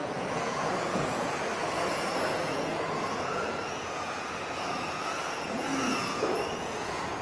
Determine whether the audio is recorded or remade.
remade